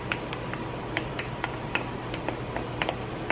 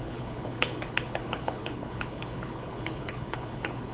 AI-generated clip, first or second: second